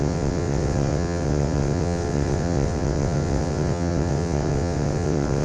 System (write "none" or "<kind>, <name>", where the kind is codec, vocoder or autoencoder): vocoder, WaveNeXt